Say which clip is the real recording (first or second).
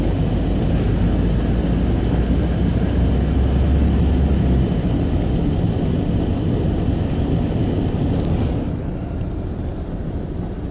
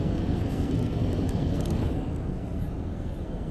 first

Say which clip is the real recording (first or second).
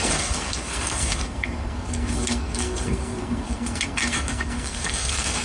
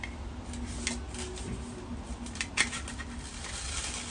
second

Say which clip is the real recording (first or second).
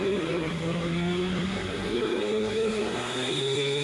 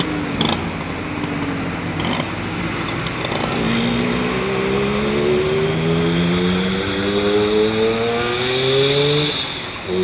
second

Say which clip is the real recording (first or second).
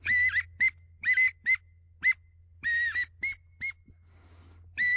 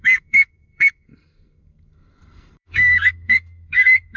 first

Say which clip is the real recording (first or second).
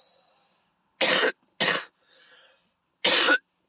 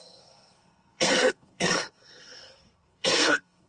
first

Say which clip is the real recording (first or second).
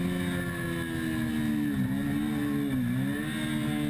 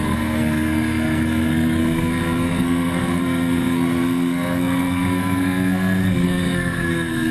first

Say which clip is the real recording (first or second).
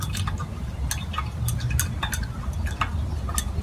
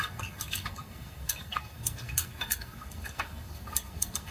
first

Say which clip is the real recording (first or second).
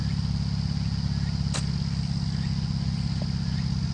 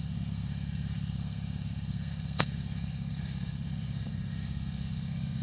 first